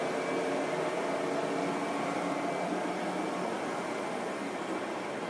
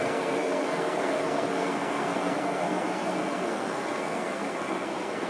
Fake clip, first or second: second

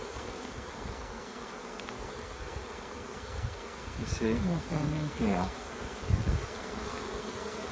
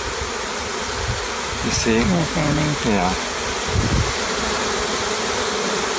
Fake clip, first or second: first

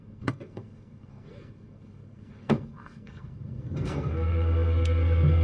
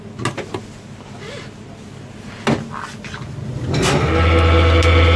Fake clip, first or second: first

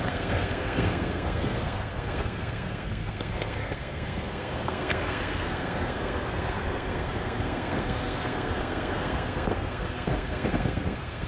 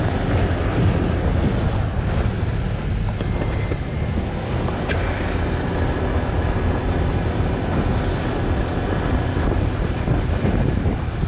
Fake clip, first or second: first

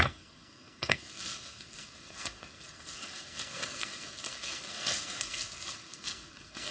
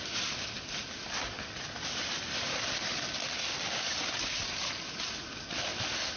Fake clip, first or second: first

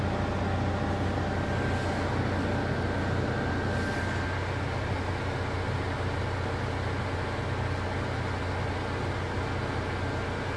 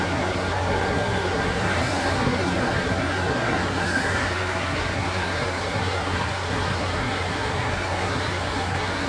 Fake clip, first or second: second